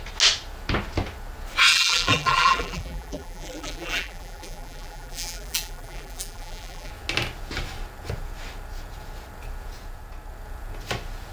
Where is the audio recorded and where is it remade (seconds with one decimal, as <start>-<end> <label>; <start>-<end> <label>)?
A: 0.0-1.7 recorded; 1.7-6.9 remade; 6.9-11.3 recorded